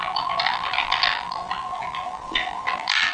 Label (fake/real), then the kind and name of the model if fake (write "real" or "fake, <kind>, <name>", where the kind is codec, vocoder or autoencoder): fake, vocoder, BigVGAN v2